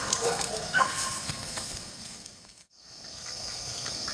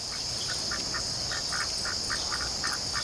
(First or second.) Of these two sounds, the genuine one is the second